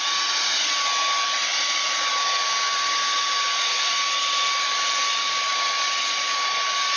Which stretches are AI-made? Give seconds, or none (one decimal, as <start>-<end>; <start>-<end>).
none